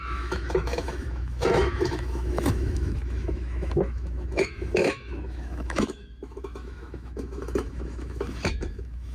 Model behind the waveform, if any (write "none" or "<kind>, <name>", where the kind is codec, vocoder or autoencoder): autoencoder, DAC-VAE